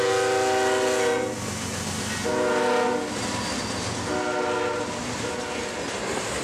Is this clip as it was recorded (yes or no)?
yes